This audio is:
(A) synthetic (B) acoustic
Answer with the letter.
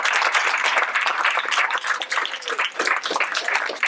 A